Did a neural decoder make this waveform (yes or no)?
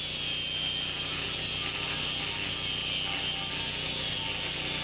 no